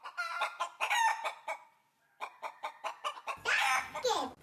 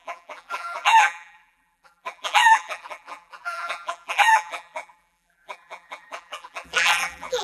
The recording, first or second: first